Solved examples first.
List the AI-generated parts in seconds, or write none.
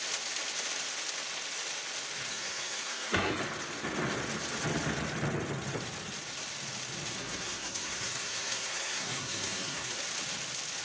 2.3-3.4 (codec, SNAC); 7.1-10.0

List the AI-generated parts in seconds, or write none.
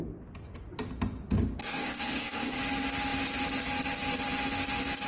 1.6-2.6 (codec, SNAC)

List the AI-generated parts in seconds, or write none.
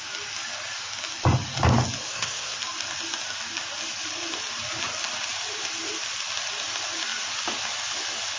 2.1-2.6 (codec, SNAC)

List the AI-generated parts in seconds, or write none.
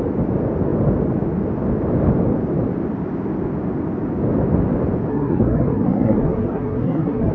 5.1-7.3 (codec, SNAC)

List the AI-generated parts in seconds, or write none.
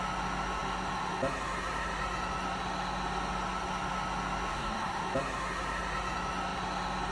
4.5-5.0 (codec, SNAC)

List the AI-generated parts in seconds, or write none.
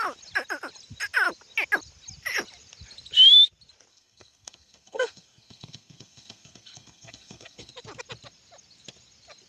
3.9-7.7 (codec, SNAC)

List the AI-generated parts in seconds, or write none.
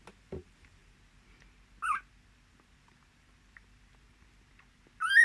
none